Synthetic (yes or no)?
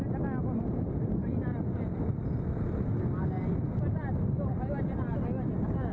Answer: no